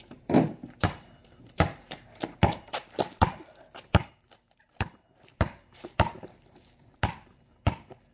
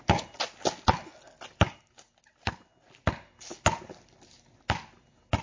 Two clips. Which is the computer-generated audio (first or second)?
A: first